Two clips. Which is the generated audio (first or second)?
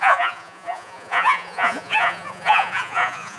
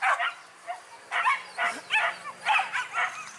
first